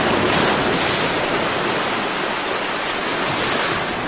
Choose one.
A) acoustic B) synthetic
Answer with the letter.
A